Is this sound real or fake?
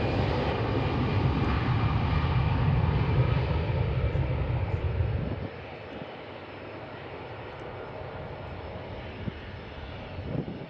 real